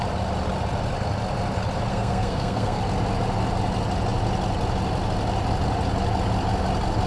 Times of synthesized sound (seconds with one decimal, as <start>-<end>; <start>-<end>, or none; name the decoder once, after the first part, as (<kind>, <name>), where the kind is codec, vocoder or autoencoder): 1.9-2.8 (codec, SNAC)